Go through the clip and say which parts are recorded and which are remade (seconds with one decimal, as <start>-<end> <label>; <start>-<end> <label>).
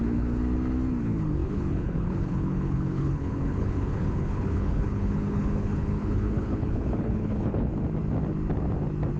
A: 0.0-0.4 remade; 0.4-1.0 recorded; 1.0-7.7 remade; 7.7-9.2 recorded